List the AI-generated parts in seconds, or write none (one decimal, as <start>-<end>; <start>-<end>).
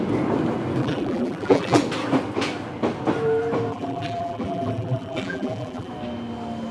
0.8-1.8; 3.7-5.9